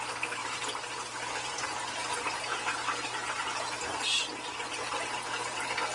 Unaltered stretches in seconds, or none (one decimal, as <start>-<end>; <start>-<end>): 0.0-0.4; 1.5-5.9